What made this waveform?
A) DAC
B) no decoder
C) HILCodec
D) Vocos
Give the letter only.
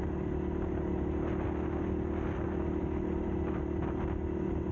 B